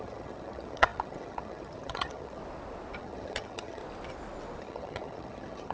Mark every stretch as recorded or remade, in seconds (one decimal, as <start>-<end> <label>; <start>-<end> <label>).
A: 0.0-2.4 remade; 2.4-3.0 recorded; 3.0-3.8 remade; 3.8-4.6 recorded; 4.6-5.7 remade